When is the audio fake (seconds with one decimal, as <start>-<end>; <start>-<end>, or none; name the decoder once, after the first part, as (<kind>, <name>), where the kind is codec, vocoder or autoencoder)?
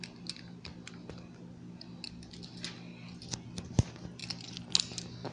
none